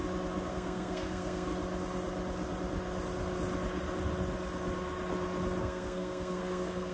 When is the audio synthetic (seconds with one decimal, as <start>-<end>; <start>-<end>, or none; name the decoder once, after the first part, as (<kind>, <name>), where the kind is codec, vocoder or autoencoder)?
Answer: 0.5-1.5 (codec, SNAC); 5.6-6.9